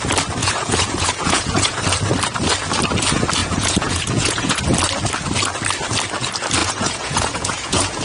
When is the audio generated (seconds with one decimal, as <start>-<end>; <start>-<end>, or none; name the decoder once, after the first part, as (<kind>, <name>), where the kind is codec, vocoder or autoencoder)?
0.4-1.8 (vocoder, Vocos); 3.4-4.6; 6.6-8.0